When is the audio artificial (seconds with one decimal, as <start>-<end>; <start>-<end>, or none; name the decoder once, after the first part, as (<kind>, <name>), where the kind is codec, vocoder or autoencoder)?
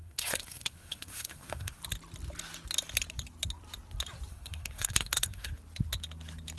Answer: 0.0-1.8 (codec, SNAC); 4.3-5.5